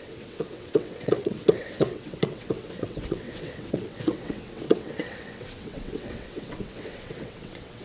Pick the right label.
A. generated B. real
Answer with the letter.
A